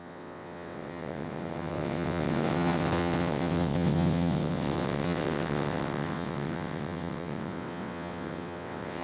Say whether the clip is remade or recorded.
remade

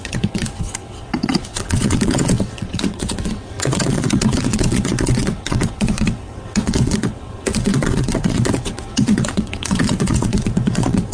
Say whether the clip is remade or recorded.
remade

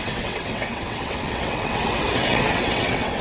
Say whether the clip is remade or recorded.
remade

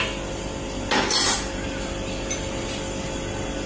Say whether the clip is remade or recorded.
recorded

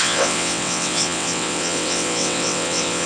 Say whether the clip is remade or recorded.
remade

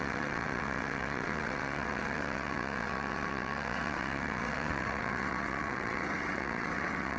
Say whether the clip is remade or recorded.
remade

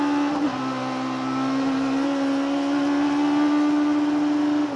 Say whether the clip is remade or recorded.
recorded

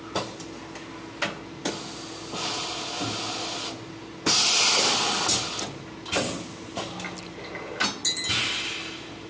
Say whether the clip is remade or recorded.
recorded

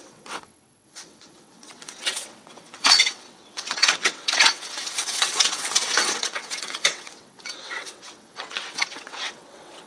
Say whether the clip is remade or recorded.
remade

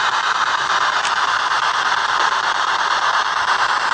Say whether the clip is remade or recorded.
recorded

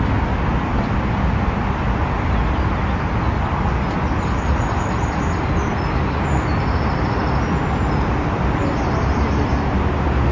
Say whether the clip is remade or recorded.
recorded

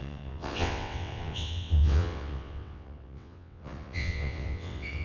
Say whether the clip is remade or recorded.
remade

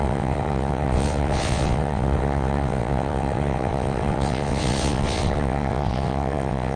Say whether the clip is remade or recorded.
remade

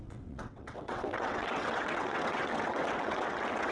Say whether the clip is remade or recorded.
remade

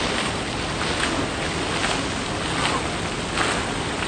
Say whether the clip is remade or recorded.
recorded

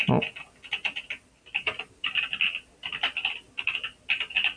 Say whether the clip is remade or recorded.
recorded